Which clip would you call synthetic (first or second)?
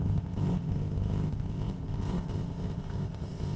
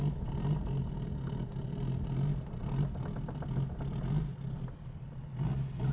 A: first